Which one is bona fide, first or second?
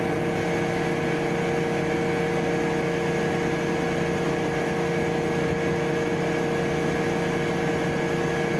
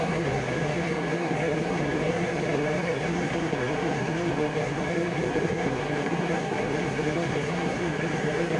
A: first